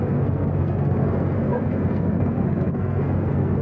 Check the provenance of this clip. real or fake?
fake